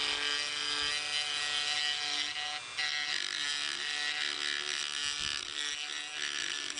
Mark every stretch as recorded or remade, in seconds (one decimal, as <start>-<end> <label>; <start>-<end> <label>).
0.0-6.8 recorded